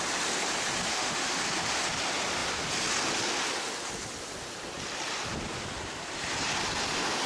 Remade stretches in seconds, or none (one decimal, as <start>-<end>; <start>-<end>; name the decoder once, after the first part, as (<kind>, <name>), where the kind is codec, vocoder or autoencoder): 0.9-1.4 (autoencoder, DAC-VAE)